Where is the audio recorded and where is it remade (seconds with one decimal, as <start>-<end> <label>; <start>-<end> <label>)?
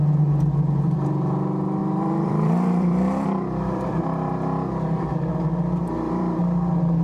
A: 0.0-1.8 recorded; 1.8-4.3 remade; 4.3-5.8 recorded; 5.8-6.4 remade; 6.4-7.0 recorded